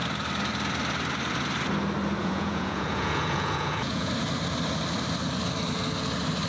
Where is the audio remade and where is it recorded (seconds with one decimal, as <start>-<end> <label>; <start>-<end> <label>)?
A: 0.0-2.2 recorded; 2.2-4.1 remade; 4.1-6.5 recorded